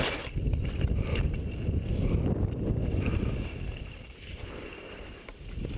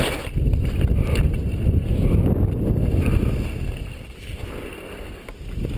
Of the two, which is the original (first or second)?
second